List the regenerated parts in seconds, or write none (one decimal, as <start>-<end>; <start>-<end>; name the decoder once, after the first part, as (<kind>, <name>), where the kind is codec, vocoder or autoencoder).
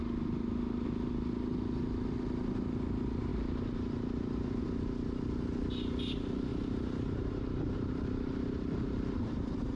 3.3-4.6 (vocoder, BigVGAN v2); 6.5-9.8